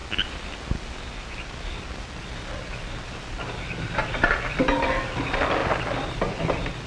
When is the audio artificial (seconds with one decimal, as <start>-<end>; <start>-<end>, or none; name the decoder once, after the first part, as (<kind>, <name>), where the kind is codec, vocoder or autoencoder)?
none